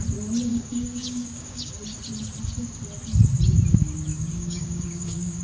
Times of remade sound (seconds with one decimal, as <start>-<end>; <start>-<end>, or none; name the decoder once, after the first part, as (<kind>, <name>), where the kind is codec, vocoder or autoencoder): 0.5-1.7 (codec, DAC); 4.1-5.4